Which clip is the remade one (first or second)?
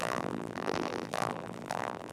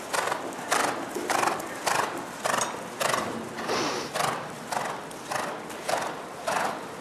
first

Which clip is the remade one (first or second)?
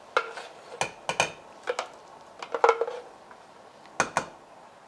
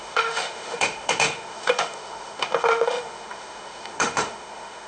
second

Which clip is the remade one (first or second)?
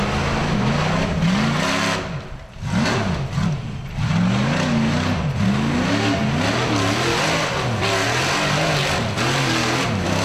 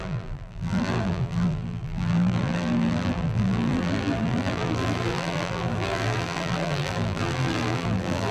second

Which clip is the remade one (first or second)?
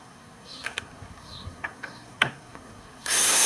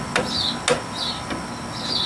first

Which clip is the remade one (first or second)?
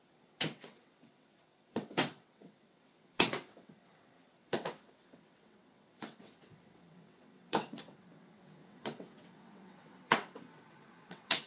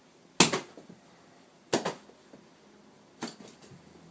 first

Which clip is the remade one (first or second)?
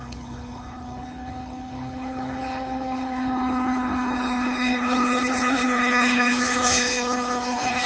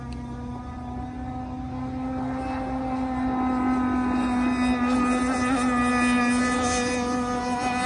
first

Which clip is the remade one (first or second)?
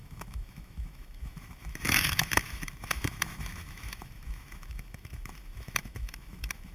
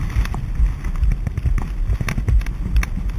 first